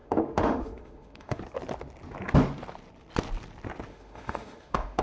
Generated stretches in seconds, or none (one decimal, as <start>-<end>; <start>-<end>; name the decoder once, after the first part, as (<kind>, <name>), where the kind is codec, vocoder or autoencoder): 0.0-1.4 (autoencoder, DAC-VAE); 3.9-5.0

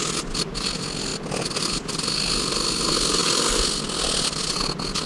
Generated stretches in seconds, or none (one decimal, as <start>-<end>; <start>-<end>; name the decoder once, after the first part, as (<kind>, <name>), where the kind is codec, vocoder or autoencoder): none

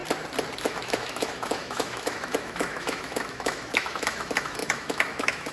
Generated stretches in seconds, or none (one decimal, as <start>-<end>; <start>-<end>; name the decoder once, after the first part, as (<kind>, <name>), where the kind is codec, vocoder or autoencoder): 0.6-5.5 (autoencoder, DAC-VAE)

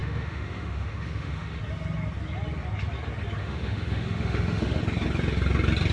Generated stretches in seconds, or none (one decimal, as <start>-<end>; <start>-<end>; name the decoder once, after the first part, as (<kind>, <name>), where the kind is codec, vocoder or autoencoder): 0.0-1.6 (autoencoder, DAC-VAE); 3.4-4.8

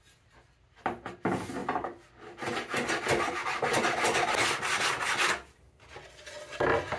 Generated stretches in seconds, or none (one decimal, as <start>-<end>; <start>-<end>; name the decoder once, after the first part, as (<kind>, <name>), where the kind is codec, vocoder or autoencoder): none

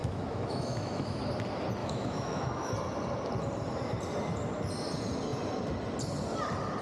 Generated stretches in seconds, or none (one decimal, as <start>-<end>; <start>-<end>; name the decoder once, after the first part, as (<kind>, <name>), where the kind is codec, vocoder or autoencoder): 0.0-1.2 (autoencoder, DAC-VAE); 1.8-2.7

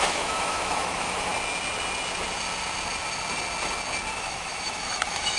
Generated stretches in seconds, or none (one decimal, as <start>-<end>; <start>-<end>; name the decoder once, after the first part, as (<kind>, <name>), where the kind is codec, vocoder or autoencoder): 0.0-1.3 (autoencoder, DAC-VAE); 4.1-5.4